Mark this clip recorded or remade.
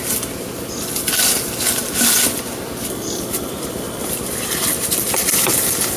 recorded